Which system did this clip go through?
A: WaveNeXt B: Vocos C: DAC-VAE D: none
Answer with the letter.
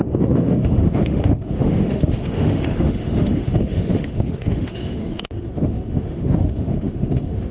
C